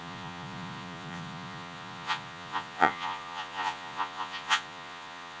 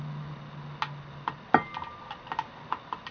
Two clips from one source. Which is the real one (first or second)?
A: second